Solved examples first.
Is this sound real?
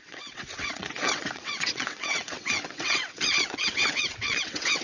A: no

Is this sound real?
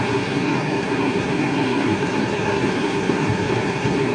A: no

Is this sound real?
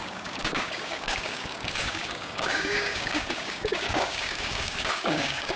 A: no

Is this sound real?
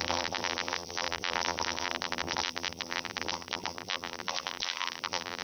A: no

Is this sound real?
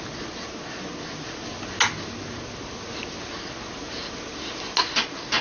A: yes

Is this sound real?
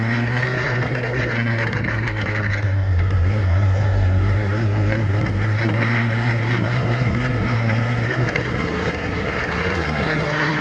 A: no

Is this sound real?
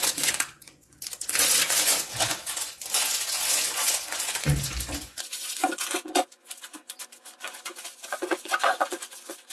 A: no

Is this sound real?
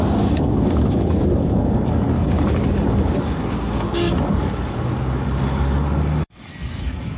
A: no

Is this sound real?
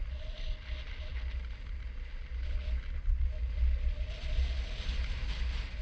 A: yes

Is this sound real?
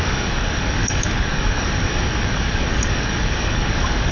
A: no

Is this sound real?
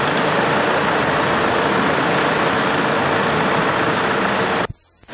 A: yes